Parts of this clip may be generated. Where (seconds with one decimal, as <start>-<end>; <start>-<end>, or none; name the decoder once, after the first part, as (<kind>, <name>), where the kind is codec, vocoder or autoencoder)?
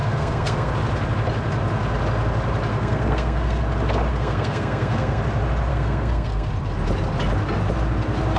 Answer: 0.0-0.7 (codec, SNAC); 2.7-3.6; 4.1-5.2; 5.7-6.5